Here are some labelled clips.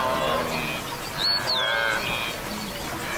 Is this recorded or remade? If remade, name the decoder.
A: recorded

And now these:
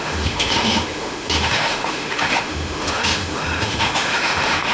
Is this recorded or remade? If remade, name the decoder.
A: remade, autoencoder, DAC-VAE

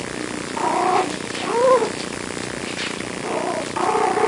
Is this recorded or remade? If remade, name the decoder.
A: recorded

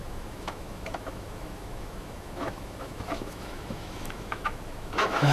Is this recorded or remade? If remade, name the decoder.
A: remade, autoencoder, DAC-VAE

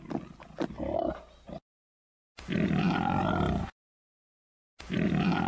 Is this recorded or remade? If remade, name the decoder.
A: recorded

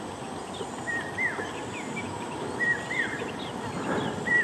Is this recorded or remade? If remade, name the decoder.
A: recorded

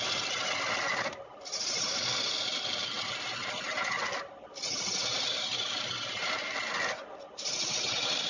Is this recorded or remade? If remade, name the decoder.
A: recorded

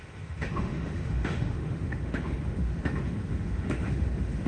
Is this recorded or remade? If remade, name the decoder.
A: remade, autoencoder, DAC-VAE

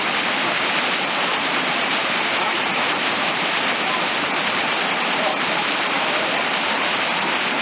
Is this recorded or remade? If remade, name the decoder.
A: recorded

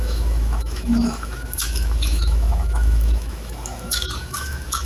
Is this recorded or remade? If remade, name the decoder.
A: remade, autoencoder, DAC-VAE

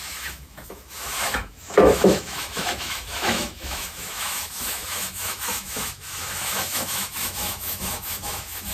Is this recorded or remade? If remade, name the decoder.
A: remade, autoencoder, DAC-VAE